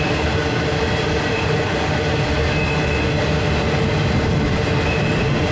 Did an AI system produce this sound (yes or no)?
no